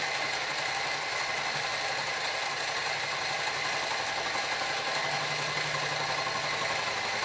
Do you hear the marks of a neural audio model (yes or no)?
no